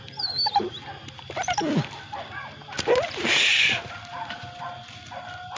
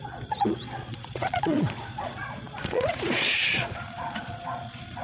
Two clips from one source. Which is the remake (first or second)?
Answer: second